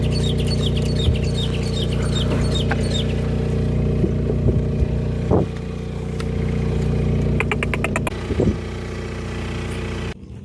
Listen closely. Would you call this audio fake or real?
real